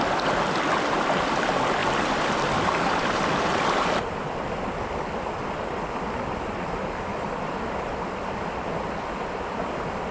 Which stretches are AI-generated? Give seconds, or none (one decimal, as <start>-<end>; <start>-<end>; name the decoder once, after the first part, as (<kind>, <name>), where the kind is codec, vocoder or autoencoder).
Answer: 1.8-5.0 (vocoder, BigVGAN v2); 7.1-7.7